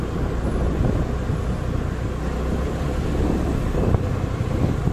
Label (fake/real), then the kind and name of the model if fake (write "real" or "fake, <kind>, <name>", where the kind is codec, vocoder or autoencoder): real